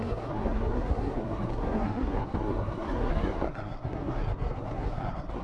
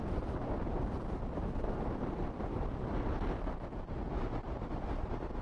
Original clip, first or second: second